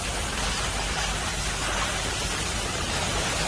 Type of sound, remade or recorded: recorded